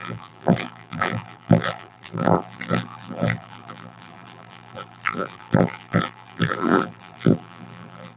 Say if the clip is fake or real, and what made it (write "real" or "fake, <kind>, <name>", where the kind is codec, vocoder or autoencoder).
fake, vocoder, BigVGAN v2